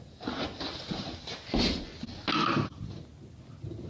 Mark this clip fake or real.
real